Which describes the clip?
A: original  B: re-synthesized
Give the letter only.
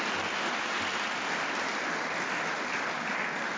A